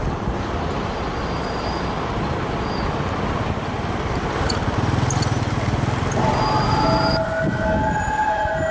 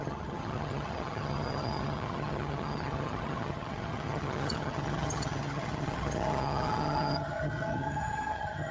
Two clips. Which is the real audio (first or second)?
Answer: first